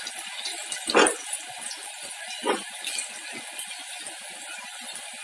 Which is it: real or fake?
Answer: real